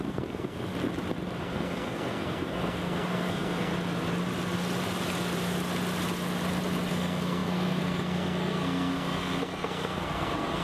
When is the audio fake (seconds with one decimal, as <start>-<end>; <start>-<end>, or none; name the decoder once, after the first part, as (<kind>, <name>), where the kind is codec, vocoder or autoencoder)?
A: 0.0-0.7 (codec, SNAC); 1.4-3.7; 6.9-10.6